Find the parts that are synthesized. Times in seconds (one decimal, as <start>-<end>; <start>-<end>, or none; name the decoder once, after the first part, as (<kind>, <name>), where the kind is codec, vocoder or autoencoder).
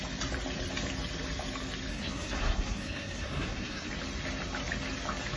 1.9-3.9 (codec, SNAC)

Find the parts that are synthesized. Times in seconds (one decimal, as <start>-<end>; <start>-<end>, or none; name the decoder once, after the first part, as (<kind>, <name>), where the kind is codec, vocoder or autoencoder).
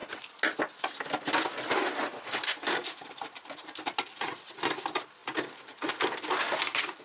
none